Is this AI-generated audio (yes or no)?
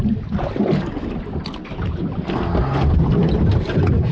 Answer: no